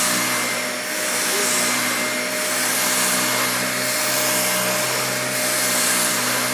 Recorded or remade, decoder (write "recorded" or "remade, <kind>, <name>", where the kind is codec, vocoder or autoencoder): recorded